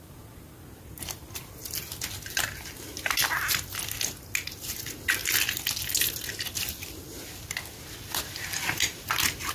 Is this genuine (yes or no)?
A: yes